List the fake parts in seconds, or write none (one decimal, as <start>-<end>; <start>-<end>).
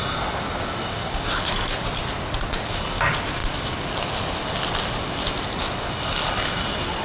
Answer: 3.4-4.4